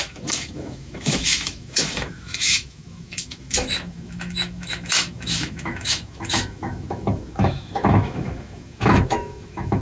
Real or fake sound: fake